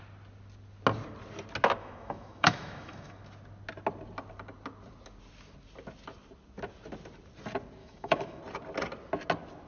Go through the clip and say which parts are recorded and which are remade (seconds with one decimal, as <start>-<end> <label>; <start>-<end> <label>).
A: 0.0-1.8 recorded; 1.8-3.2 remade; 3.2-7.8 recorded; 7.8-8.4 remade; 8.4-9.7 recorded